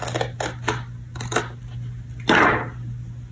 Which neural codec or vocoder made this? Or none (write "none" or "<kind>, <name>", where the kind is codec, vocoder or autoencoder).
none